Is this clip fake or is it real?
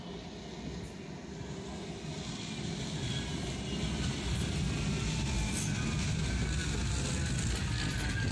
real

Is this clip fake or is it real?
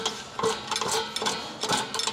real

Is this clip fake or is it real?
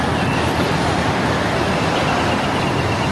real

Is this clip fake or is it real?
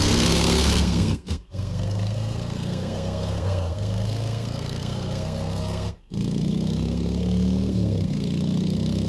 fake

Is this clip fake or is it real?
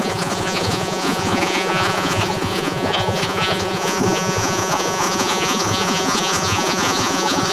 fake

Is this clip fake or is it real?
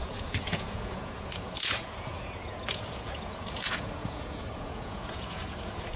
fake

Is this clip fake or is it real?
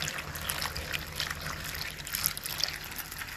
real